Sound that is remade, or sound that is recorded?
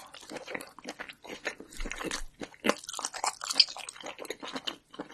recorded